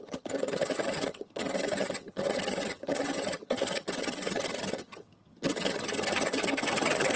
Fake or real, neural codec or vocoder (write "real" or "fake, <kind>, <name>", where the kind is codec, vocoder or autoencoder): fake, vocoder, HiFi-GAN